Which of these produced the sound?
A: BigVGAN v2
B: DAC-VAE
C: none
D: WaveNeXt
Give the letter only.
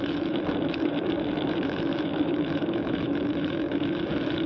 B